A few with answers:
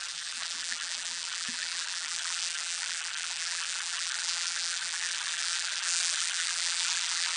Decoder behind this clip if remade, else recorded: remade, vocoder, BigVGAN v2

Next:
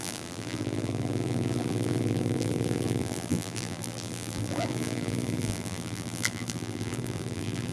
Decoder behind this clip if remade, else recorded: remade, vocoder, BigVGAN v2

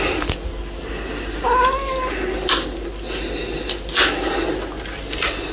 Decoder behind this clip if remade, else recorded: recorded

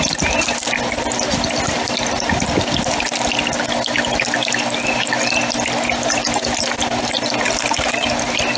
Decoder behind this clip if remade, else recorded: recorded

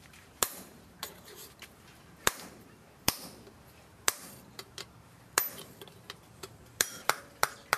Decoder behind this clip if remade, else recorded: remade, vocoder, BigVGAN v2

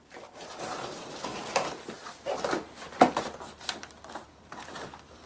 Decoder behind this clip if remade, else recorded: remade, vocoder, BigVGAN v2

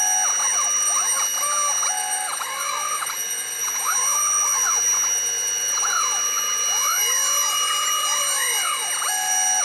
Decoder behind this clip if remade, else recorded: recorded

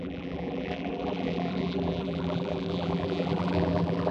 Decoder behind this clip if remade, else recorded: remade, vocoder, BigVGAN v2